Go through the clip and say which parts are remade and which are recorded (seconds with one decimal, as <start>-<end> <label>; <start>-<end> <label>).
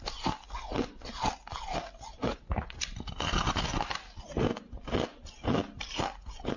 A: 0.0-2.2 recorded; 2.2-2.9 remade; 2.9-6.6 recorded